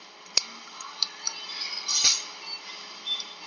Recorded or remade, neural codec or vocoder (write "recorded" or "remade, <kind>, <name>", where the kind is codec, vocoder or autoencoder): recorded